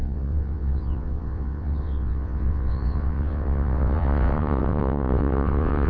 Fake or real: fake